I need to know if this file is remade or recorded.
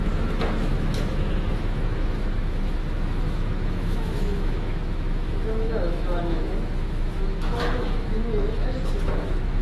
remade